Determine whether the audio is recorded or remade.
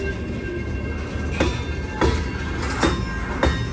recorded